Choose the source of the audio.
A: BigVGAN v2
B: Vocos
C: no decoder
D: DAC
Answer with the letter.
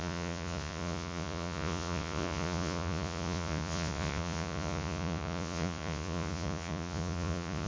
B